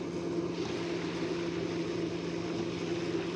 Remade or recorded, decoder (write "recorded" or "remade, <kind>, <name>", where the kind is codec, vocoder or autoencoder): recorded